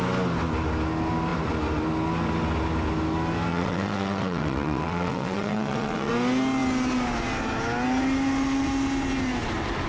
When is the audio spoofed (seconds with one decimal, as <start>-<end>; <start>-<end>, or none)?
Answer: 3.5-6.1